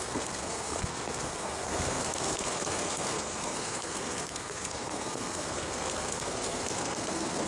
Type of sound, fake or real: fake